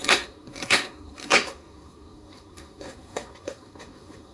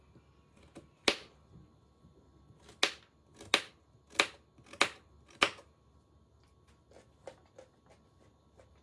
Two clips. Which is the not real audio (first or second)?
first